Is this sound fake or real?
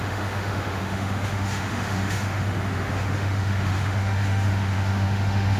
fake